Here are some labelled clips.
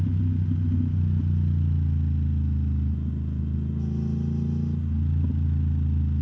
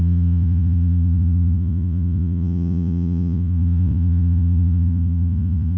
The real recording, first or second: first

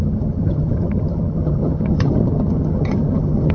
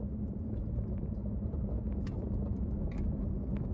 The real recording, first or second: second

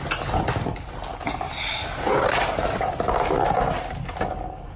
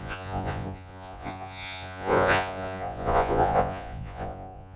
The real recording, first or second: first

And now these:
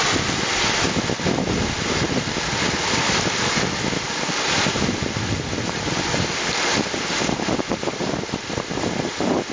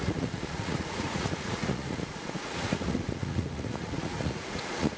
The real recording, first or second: first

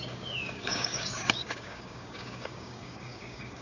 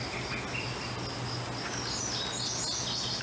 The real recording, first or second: second